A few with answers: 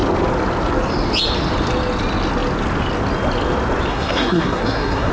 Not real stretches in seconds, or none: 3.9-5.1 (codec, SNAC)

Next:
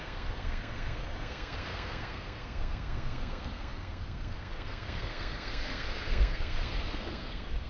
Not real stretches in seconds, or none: 0.0-7.7 (codec, SNAC)

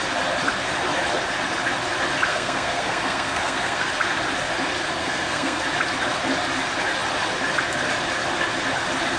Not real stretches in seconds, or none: 2.3-3.9 (codec, SNAC); 5.0-5.6

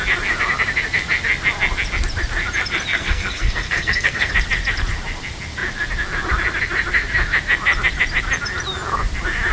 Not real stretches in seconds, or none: 2.9-4.3 (codec, SNAC)

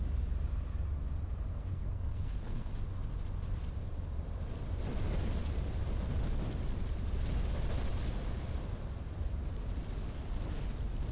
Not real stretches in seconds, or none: 1.5-2.7 (codec, SNAC)